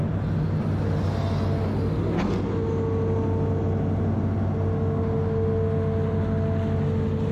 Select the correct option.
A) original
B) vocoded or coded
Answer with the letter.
A